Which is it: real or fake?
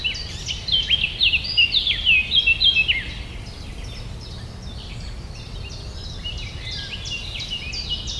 real